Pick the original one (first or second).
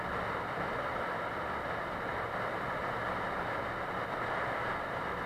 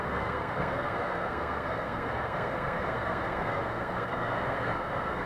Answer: first